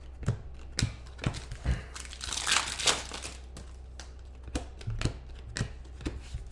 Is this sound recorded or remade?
recorded